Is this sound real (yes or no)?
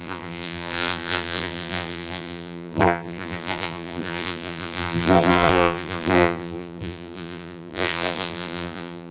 no